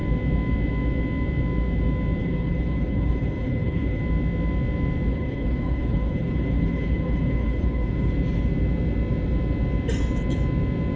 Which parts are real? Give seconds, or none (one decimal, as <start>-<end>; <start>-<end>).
0.0-2.2; 4.0-5.1; 8.1-11.0